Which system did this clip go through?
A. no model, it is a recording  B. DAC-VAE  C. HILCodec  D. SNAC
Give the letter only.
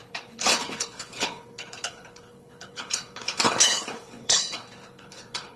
C